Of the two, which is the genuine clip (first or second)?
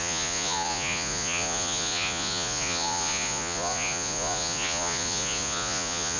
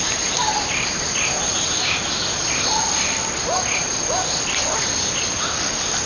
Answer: second